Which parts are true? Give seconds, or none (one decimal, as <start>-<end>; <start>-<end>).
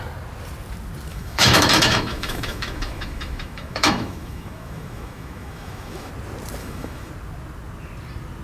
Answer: 0.0-1.1; 6.1-6.6; 7.1-8.4